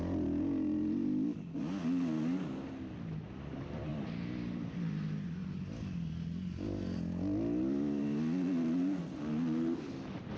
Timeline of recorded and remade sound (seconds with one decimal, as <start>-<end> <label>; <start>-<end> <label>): 0.0-3.9 recorded; 3.9-4.7 remade; 4.7-10.4 recorded